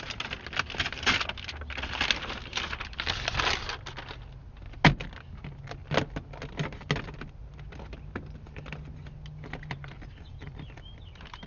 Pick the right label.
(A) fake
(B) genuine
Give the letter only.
B